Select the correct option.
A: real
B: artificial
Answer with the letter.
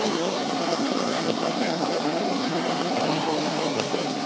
B